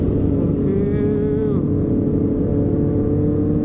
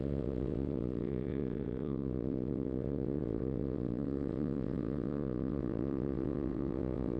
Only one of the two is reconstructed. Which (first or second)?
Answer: second